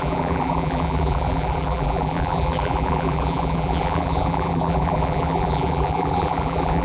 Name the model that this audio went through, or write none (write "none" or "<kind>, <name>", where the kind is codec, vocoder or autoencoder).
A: vocoder, BigVGAN v2